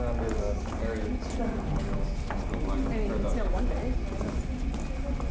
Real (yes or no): yes